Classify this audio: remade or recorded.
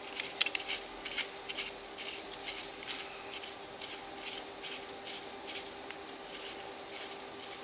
recorded